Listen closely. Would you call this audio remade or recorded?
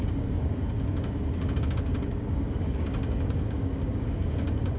remade